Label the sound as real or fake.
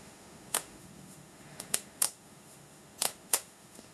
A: fake